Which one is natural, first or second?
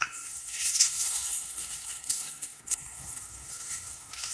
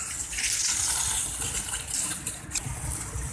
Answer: second